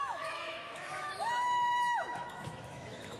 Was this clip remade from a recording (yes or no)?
yes